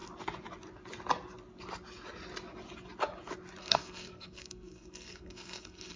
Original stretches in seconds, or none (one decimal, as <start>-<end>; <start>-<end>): 0.0-3.6